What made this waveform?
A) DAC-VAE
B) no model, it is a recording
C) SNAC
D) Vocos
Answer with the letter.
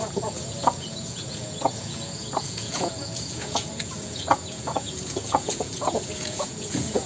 D